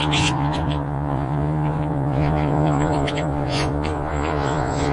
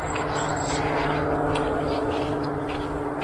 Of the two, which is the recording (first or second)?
second